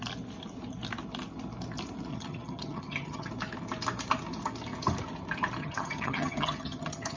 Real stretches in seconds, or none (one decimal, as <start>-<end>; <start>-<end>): 0.0-2.1; 3.3-5.6